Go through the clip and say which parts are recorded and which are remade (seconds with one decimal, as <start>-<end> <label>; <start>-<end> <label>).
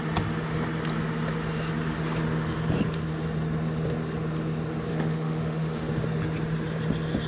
0.0-4.9 recorded; 4.9-5.9 remade; 5.9-7.3 recorded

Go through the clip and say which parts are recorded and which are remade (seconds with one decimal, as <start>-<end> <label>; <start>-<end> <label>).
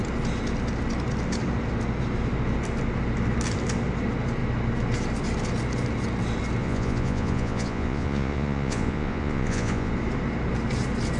0.0-6.6 recorded; 6.6-9.9 remade; 9.9-11.2 recorded